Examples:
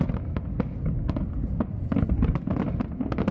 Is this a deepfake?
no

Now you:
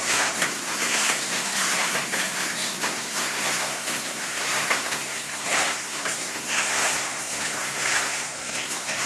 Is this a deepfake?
yes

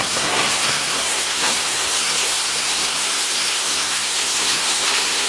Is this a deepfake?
yes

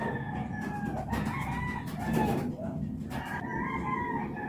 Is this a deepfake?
no